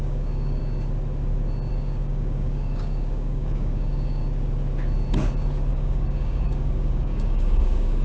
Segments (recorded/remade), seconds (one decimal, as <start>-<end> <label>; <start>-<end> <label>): 0.0-0.6 remade; 0.6-1.7 recorded; 1.7-4.2 remade; 4.2-5.7 recorded; 5.7-8.0 remade